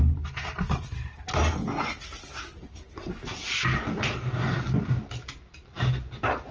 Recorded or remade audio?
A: recorded